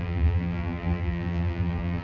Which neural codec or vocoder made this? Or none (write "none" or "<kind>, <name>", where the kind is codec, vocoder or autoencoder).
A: vocoder, BigVGAN v2